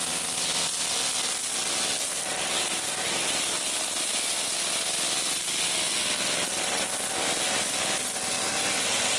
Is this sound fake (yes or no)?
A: no